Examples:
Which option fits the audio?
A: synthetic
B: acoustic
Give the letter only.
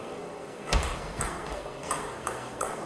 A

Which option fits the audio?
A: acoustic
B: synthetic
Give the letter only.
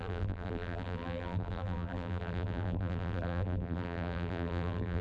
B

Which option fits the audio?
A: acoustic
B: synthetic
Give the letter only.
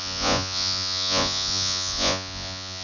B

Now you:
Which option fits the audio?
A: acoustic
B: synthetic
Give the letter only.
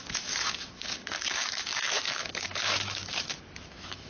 B